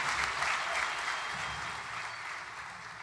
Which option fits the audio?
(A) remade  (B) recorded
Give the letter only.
B